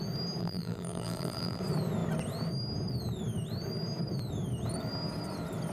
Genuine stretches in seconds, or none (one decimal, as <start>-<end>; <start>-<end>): 0.0-0.4; 1.6-5.7